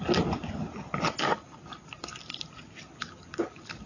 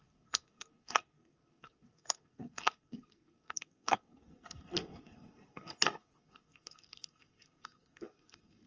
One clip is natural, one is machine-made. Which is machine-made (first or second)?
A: second